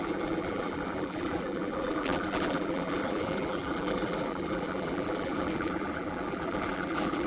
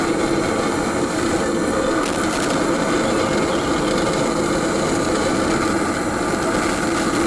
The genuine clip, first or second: second